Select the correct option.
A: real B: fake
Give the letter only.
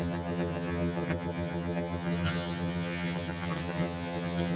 B